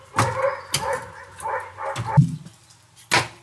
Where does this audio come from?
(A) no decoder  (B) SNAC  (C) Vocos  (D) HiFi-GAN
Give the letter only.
A